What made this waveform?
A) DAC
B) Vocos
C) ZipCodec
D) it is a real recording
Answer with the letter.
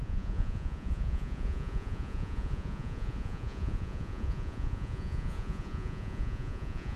B